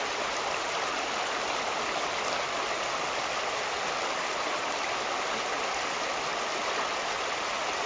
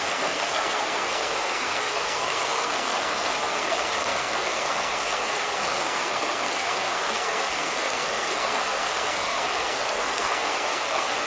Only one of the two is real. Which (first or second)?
first